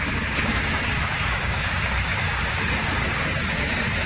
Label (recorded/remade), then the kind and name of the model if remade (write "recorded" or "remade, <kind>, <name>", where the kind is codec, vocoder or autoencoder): remade, codec, DAC